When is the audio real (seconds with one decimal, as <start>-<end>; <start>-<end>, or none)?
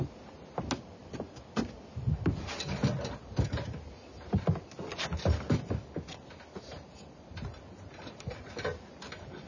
0.0-9.5